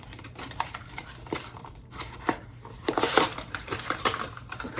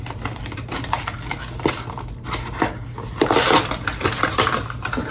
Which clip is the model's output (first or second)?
first